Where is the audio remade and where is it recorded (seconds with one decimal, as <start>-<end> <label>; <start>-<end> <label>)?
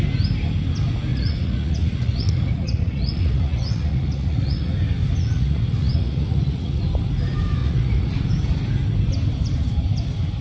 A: 0.0-1.1 recorded; 1.1-4.7 remade; 4.7-5.2 recorded; 5.2-6.8 remade; 6.8-7.6 recorded; 7.6-8.3 remade; 8.3-10.4 recorded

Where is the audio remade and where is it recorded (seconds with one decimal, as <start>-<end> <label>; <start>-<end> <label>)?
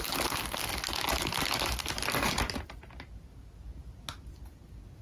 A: 0.0-5.0 recorded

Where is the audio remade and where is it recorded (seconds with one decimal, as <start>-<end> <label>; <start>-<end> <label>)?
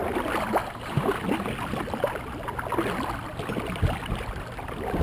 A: 0.0-0.6 recorded; 0.6-1.1 remade; 1.1-5.0 recorded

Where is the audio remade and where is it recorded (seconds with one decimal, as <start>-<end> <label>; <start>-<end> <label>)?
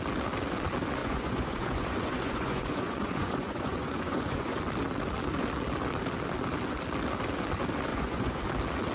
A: 0.0-1.0 recorded; 1.0-4.6 remade; 4.6-7.9 recorded; 7.9-8.4 remade; 8.4-8.9 recorded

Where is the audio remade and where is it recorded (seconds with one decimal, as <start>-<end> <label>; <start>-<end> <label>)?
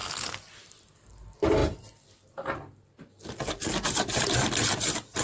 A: 0.0-5.2 recorded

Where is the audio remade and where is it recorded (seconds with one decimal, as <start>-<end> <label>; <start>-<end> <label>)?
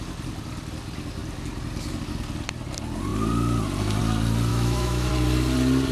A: 0.0-4.5 recorded; 4.5-5.1 remade; 5.1-5.9 recorded